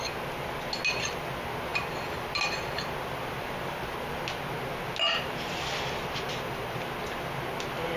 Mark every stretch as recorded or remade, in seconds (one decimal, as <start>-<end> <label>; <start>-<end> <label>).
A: 0.0-8.0 recorded